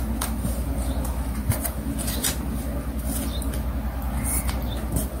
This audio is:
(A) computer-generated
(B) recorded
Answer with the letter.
B